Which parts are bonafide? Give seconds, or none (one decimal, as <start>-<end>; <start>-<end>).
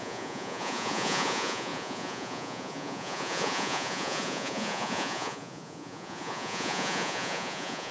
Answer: none